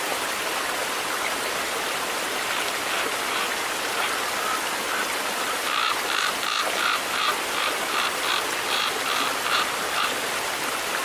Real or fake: real